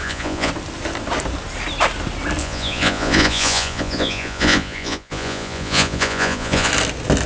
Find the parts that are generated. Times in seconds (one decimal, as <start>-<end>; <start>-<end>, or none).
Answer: 0.0-0.5; 2.4-6.7